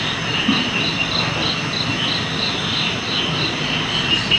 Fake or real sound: real